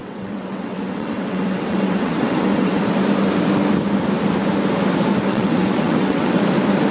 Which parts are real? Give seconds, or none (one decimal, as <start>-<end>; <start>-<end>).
2.8-5.3; 6.4-6.9